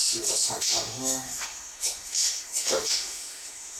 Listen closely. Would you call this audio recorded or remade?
remade